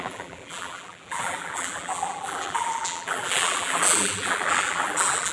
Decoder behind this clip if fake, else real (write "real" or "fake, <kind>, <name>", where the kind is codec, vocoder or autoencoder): fake, vocoder, BigVGAN v2